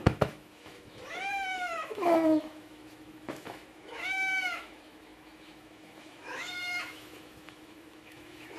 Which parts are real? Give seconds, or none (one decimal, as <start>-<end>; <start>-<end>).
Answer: none